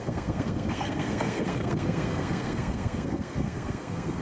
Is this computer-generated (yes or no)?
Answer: yes